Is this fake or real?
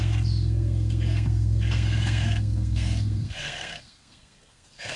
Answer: fake